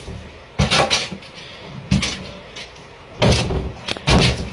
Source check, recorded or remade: recorded